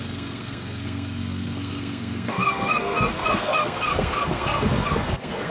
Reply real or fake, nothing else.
fake